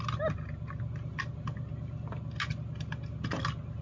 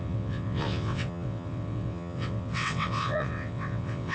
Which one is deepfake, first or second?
second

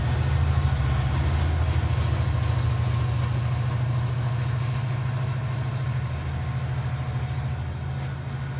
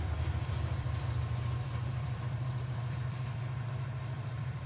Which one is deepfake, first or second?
second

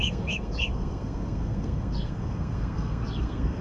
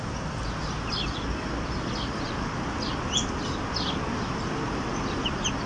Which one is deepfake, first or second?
first